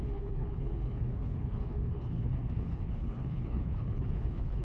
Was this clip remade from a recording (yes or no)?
yes